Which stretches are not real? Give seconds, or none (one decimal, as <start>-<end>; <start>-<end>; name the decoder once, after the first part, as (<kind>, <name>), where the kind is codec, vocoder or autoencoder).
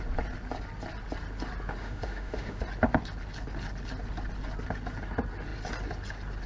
1.8-2.6 (autoencoder, DAC-VAE)